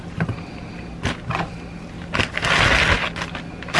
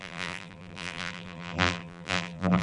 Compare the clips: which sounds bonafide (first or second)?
first